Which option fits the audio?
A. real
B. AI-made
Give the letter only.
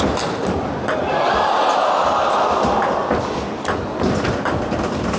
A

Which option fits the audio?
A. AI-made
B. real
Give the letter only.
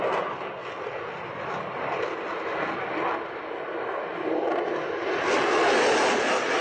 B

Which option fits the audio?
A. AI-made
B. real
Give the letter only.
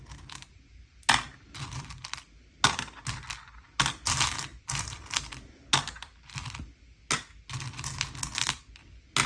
B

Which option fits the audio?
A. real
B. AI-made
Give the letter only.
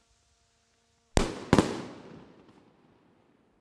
A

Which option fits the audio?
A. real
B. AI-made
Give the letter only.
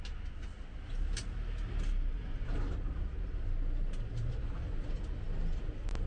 A